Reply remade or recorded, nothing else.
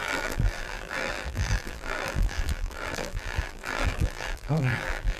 remade